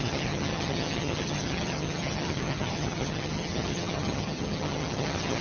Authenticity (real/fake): fake